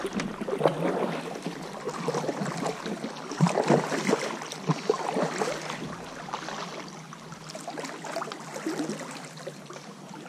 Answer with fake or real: real